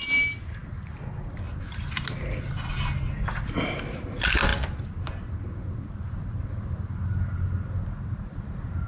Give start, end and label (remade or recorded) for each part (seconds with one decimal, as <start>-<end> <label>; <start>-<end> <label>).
0.0-8.9 recorded